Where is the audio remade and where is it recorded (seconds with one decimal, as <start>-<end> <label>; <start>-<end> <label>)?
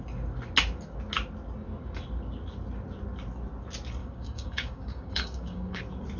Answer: 0.0-4.0 recorded; 4.0-5.8 remade; 5.8-6.2 recorded